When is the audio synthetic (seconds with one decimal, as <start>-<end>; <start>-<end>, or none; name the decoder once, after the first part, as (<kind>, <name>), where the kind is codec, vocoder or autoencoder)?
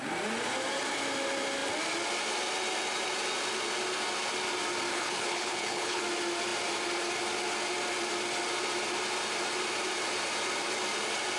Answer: 4.9-6.0 (codec, HILCodec)